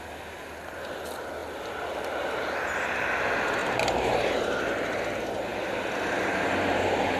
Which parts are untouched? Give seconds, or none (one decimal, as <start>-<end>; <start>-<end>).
0.0-3.6; 4.6-7.2